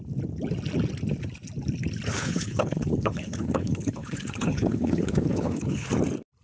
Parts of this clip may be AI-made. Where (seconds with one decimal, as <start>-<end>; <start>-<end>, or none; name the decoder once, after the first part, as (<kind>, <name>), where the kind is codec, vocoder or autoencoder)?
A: 2.1-5.9 (codec, HILCodec)